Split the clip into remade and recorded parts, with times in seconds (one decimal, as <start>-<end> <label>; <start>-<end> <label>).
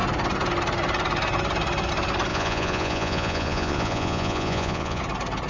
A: 0.0-2.3 recorded; 2.3-5.0 remade; 5.0-5.5 recorded